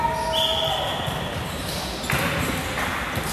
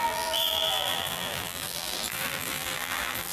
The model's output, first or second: second